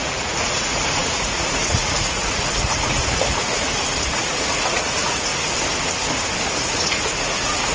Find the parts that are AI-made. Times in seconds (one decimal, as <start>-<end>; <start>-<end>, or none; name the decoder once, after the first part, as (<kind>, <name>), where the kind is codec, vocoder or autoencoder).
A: 0.0-5.3 (vocoder, Vocos); 6.4-7.7